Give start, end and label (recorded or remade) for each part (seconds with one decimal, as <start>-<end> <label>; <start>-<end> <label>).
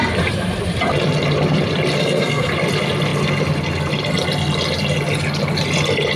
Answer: 0.0-2.0 recorded; 2.0-2.5 remade; 2.5-6.2 recorded